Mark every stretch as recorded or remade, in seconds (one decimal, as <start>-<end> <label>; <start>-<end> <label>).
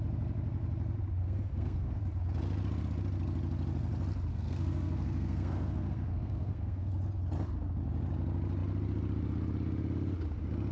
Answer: 0.0-1.2 recorded; 1.2-2.0 remade; 2.0-4.3 recorded; 4.3-6.9 remade; 6.9-10.7 recorded